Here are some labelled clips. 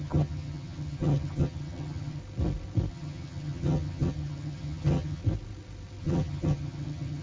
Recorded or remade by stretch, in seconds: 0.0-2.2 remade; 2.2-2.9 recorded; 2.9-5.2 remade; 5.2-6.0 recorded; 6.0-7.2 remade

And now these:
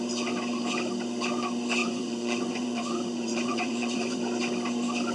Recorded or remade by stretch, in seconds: 0.0-1.8 recorded; 1.8-4.2 remade; 4.2-5.1 recorded

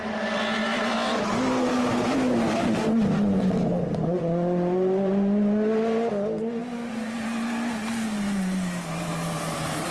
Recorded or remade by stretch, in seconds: 0.0-9.9 recorded

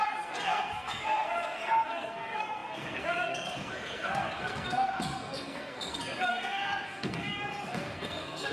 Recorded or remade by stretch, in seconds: 0.0-8.5 remade

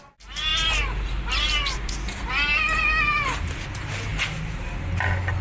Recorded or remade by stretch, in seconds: 0.0-5.4 recorded

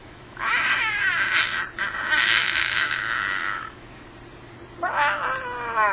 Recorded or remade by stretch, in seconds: 0.0-0.8 remade; 0.8-2.2 recorded; 2.2-4.0 remade; 4.0-5.9 recorded